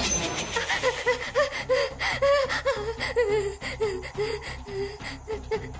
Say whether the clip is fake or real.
real